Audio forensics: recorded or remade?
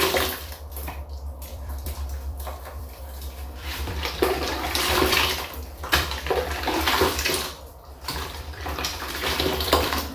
remade